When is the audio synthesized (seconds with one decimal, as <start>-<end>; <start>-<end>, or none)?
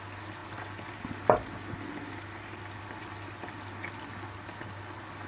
none